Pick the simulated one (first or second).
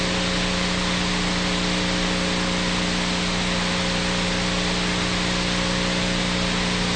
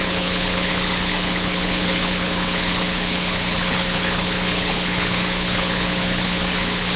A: second